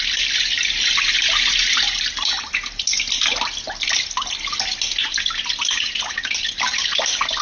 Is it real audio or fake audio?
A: real